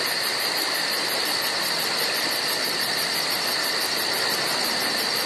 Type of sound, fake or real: real